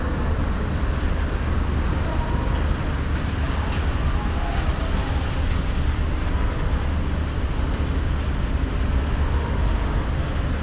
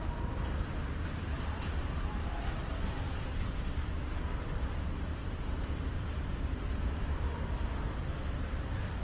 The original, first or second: first